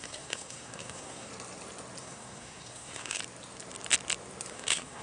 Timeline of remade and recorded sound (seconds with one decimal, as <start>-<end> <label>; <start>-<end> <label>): 0.0-1.3 remade; 1.3-2.0 recorded; 2.0-3.2 remade; 3.2-4.5 recorded; 4.5-5.0 remade